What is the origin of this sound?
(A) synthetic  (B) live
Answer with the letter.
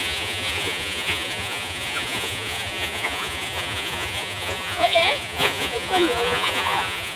A